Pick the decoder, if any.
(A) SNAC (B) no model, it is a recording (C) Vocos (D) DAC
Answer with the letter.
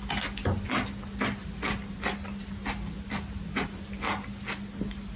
B